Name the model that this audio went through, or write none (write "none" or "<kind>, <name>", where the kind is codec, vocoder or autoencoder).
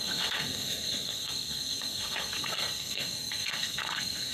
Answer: codec, SNAC